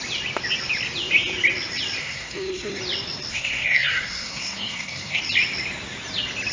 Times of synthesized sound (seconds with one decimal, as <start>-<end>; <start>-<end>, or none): 2.0-2.8; 3.3-5.2